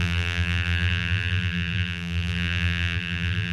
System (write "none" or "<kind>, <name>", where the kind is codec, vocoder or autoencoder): vocoder, BigVGAN v2